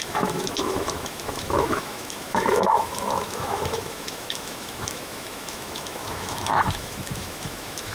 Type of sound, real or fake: fake